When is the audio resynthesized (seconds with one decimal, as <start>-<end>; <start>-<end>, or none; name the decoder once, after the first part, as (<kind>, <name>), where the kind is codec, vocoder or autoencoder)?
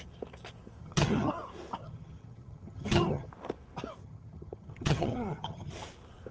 0.8-1.3 (vocoder, HiFi-GAN); 1.8-3.3; 4.0-5.7